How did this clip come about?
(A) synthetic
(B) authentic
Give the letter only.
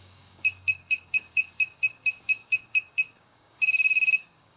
A